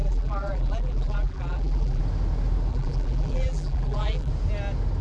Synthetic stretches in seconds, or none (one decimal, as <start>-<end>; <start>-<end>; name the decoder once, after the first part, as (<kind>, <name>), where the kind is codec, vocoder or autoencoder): 0.0-2.0 (vocoder, BigVGAN v2); 2.7-4.3